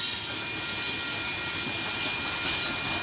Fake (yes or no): no